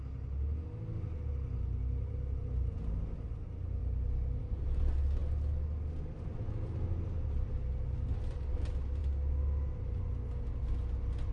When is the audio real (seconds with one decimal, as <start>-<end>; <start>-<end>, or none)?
0.0-11.3